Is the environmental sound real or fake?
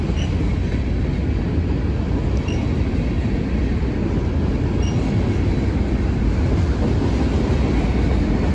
real